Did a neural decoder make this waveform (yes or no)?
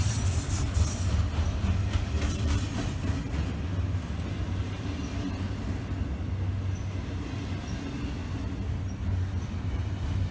no